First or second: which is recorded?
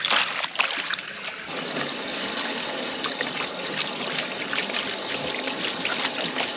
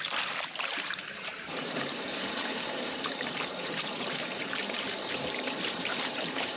first